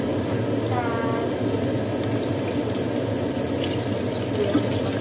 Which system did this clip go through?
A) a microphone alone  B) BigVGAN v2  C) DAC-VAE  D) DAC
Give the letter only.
A